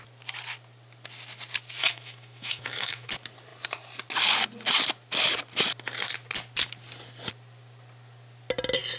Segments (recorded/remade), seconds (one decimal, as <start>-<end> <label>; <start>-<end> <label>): 0.0-1.8 recorded; 1.8-3.1 remade; 3.1-9.0 recorded